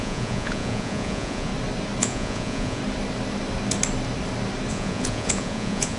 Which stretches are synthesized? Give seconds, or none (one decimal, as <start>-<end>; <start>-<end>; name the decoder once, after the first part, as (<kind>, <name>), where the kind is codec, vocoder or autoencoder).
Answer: 0.0-1.5 (vocoder, Vocos); 2.0-2.8; 4.7-6.0